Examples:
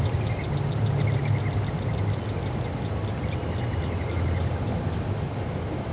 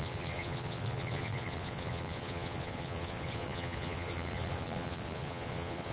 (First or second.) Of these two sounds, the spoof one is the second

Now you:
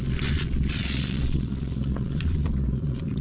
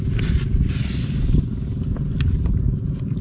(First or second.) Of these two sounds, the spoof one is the first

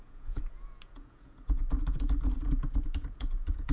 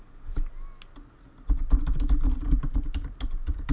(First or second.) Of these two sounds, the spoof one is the first